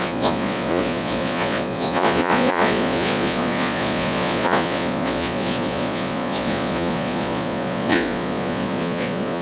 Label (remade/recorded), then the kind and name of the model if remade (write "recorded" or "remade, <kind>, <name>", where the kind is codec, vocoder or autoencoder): remade, vocoder, Vocos